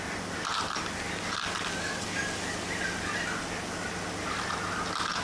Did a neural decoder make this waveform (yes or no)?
no